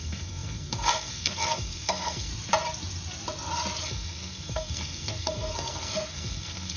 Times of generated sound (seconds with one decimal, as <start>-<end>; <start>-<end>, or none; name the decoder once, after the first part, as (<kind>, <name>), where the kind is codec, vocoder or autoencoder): 0.0-2.3 (codec, SNAC); 3.8-6.8